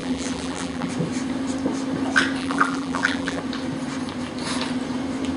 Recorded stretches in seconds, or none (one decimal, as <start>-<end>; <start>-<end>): 0.9-2.4; 3.4-5.4